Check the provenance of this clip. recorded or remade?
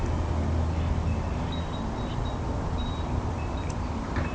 recorded